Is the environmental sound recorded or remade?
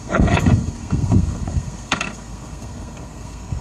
remade